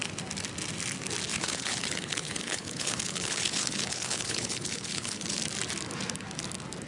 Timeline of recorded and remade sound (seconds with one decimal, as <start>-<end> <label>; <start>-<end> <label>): 0.0-1.3 recorded; 1.3-5.4 remade; 5.4-6.9 recorded